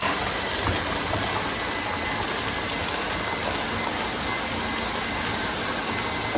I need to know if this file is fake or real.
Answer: real